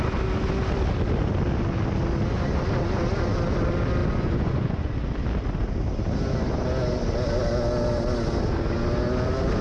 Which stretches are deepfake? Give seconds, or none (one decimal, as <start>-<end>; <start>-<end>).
4.0-4.9